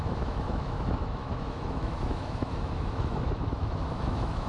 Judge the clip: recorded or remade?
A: remade